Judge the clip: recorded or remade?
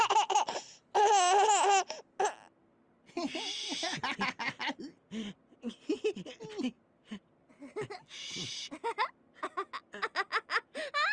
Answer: recorded